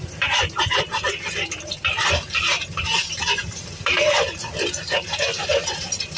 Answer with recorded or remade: remade